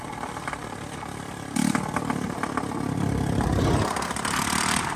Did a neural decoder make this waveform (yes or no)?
no